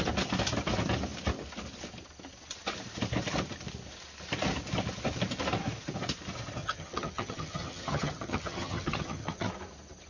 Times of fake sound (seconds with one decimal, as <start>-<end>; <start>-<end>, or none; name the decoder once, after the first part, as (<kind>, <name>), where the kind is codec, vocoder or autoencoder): 6.6-9.5 (vocoder, HiFi-GAN)